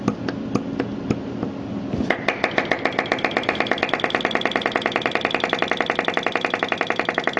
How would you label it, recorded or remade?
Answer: recorded